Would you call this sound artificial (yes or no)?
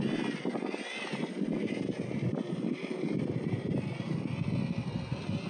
no